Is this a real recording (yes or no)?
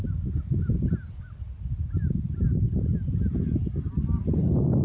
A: yes